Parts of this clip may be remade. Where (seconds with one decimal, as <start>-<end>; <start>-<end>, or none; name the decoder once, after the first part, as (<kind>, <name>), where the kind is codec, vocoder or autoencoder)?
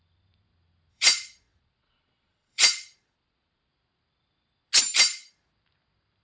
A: 0.9-3.7 (vocoder, Vocos)